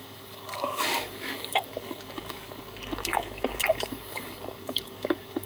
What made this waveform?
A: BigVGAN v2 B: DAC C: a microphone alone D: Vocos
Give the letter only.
B